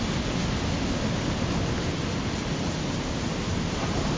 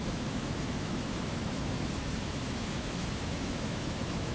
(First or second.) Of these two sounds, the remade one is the second